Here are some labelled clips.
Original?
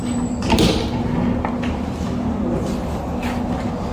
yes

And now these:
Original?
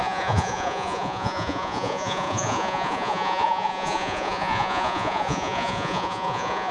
no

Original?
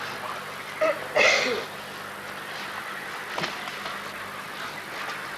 yes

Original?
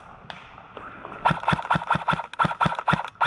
yes